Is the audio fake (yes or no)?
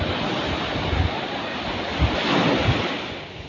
no